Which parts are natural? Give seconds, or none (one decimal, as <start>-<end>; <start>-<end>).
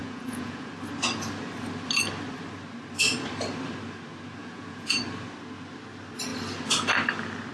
0.7-4.4; 5.0-7.5